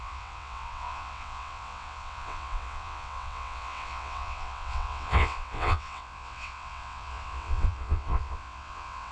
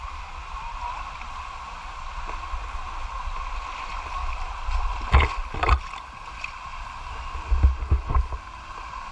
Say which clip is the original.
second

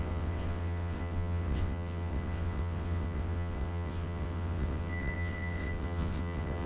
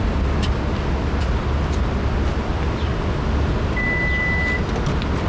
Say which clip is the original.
second